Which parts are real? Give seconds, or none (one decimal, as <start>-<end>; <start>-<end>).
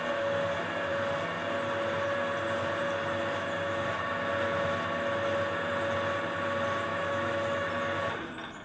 0.0-6.9; 7.7-8.6